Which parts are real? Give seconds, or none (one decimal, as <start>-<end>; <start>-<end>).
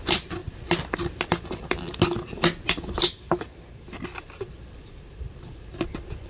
0.0-6.3